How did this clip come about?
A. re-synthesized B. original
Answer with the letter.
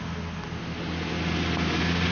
B